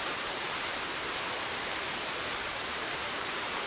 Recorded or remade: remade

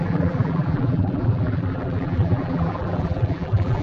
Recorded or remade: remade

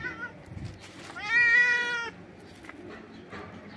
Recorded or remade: recorded